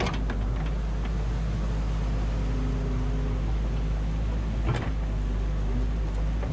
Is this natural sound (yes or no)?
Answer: yes